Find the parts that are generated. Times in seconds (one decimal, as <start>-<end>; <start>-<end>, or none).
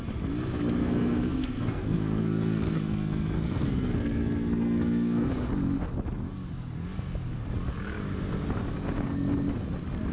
0.8-5.3